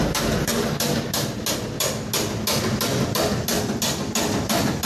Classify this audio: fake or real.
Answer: real